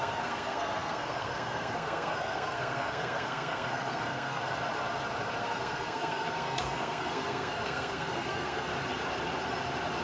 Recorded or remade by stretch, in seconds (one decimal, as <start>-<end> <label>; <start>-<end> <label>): 0.0-4.4 remade; 4.4-5.4 recorded; 5.4-8.7 remade; 8.7-10.0 recorded